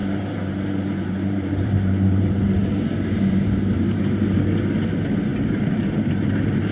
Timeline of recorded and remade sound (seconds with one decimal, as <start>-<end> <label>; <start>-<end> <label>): 0.0-4.0 remade; 4.0-5.3 recorded; 5.3-6.1 remade; 6.1-6.7 recorded